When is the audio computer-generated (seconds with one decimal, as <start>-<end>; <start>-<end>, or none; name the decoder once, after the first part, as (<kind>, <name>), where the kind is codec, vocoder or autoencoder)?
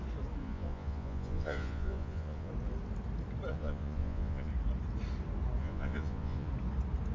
0.4-2.5 (vocoder, Vocos); 3.5-4.5; 5.6-6.5